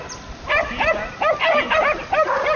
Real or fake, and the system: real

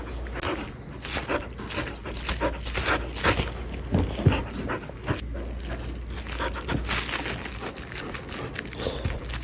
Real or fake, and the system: real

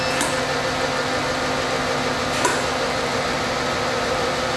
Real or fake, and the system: real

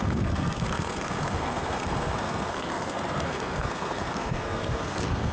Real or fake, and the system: fake, codec, SNAC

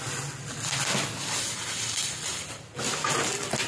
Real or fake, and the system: real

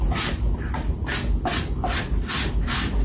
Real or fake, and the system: real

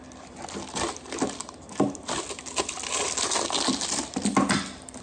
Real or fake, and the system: real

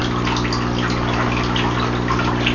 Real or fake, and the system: real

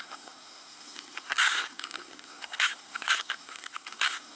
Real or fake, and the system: fake, codec, SNAC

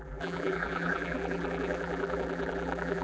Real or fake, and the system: fake, vocoder, BigVGAN v2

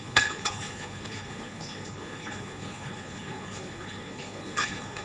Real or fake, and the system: fake, codec, HILCodec